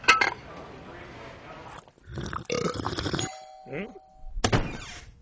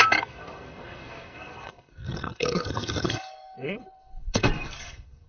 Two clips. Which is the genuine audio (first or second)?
first